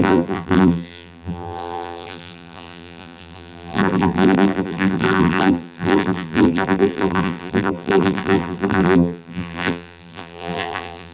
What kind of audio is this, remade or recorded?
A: remade